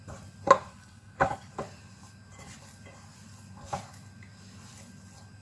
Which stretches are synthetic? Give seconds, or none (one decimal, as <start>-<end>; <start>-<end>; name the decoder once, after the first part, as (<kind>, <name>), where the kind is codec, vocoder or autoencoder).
0.7-1.5 (codec, HILCodec)